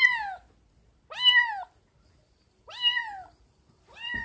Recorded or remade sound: recorded